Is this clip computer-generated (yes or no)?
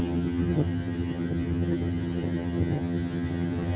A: yes